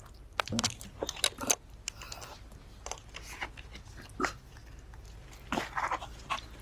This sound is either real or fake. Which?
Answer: real